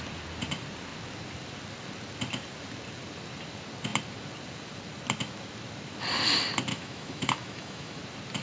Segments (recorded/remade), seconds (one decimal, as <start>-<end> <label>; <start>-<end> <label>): 0.0-6.7 recorded; 6.7-8.0 remade; 8.0-8.4 recorded